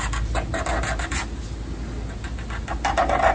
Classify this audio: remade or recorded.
recorded